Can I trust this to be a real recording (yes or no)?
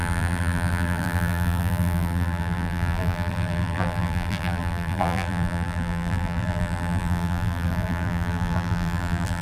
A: no